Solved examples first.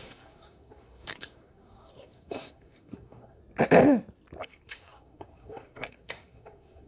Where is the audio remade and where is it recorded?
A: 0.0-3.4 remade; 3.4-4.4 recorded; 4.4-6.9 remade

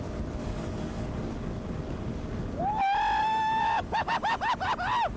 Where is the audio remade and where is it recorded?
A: 0.0-0.4 recorded; 0.4-2.6 remade; 2.6-3.2 recorded; 3.2-4.1 remade; 4.1-5.2 recorded

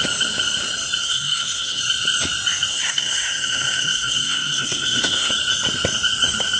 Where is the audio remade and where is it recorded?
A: 0.0-1.0 recorded; 1.0-1.8 remade; 1.8-2.7 recorded; 2.7-5.3 remade; 5.3-6.6 recorded

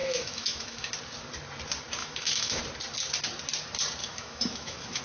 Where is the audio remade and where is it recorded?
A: 0.0-0.9 remade; 0.9-2.0 recorded; 2.0-2.6 remade; 2.6-4.0 recorded; 4.0-5.0 remade

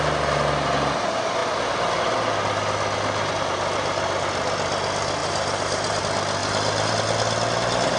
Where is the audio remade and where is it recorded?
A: 0.0-5.2 recorded; 5.2-6.0 remade; 6.0-6.4 recorded; 6.4-6.9 remade; 6.9-8.0 recorded

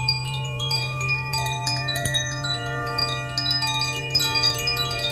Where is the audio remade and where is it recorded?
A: 0.0-3.0 remade; 3.0-4.0 recorded; 4.0-5.1 remade

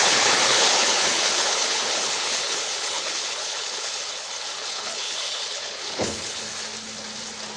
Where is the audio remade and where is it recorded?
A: 0.0-6.5 remade; 6.5-7.6 recorded